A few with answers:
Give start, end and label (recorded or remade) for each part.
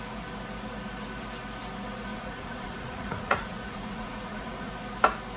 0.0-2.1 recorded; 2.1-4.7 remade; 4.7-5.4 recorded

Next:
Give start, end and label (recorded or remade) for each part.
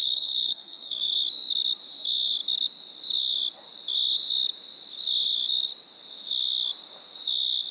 0.0-1.1 remade; 1.1-7.7 recorded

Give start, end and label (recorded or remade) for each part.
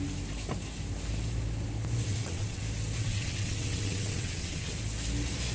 0.0-2.1 recorded; 2.1-2.6 remade; 2.6-3.0 recorded; 3.0-4.7 remade; 4.7-5.5 recorded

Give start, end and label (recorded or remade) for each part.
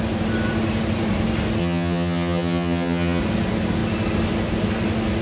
0.0-1.6 recorded; 1.6-3.2 remade; 3.2-5.2 recorded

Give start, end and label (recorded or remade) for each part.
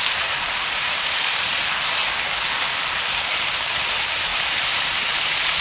0.0-2.0 remade; 2.0-3.1 recorded; 3.1-5.6 remade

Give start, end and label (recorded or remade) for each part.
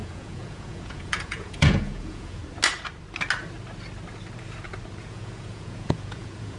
0.0-2.4 remade; 2.4-5.1 recorded; 5.1-6.6 remade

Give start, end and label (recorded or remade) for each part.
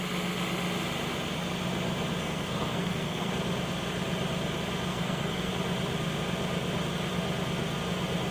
0.0-2.2 recorded; 2.2-3.3 remade; 3.3-4.9 recorded; 4.9-5.5 remade; 5.5-8.3 recorded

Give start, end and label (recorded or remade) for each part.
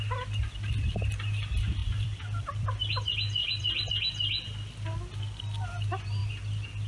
0.0-1.8 recorded; 1.8-2.8 remade; 2.8-3.4 recorded; 3.4-3.9 remade; 3.9-6.9 recorded